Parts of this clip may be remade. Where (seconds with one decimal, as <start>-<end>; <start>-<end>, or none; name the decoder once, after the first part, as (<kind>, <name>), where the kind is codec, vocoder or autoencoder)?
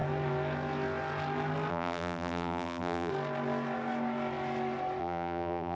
1.7-3.1 (vocoder, BigVGAN v2); 5.0-5.7